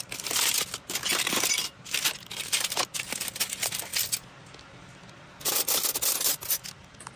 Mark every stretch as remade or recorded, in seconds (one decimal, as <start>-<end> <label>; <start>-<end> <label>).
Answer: 0.0-7.2 recorded